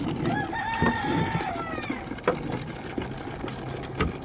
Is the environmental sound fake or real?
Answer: real